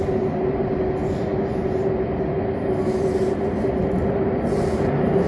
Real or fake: real